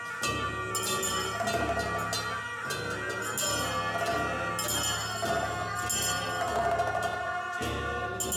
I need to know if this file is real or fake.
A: real